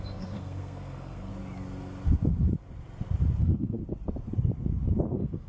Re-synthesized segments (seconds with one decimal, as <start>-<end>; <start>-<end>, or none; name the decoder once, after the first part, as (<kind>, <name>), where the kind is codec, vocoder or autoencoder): 0.0-1.3 (codec, SNAC); 3.4-3.8; 5.1-5.5